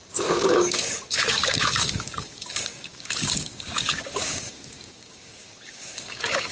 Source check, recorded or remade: remade